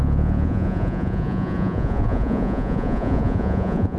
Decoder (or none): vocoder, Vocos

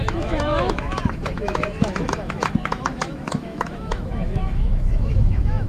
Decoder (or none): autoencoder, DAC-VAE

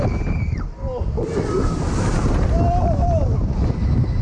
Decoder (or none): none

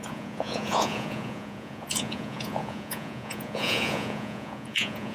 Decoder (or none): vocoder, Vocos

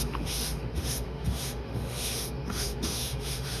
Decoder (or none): autoencoder, DAC-VAE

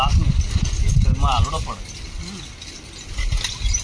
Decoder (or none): none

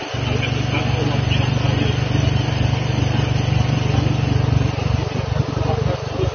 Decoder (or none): none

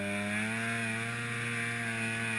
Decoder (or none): none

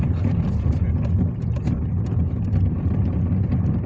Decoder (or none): none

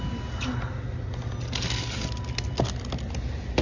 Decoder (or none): none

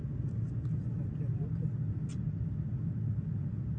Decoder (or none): none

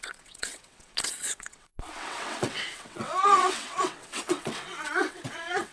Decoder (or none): vocoder, WaveNeXt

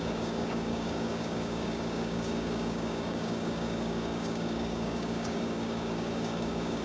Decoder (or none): codec, DAC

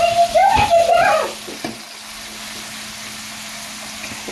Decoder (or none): none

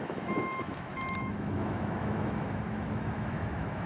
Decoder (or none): autoencoder, DAC-VAE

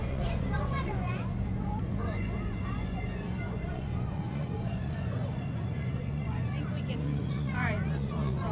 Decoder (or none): vocoder, Vocos